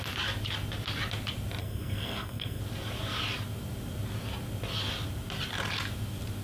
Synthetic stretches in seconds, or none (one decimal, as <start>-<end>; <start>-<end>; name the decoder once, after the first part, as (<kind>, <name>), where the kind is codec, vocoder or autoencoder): 1.6-2.6 (codec, SNAC)